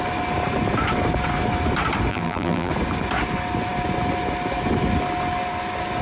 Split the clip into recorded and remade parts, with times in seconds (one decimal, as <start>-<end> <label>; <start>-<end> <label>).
0.0-2.1 recorded; 2.1-2.7 remade; 2.7-6.0 recorded